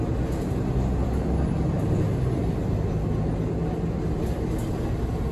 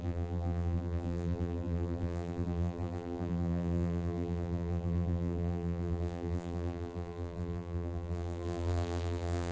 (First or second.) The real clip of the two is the first